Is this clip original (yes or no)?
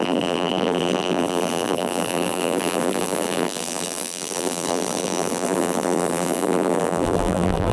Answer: no